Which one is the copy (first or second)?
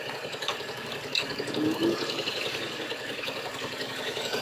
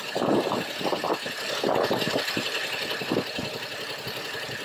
first